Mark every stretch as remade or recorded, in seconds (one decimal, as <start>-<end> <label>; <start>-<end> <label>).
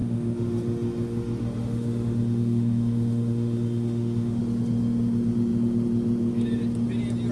0.0-4.4 remade; 4.4-7.3 recorded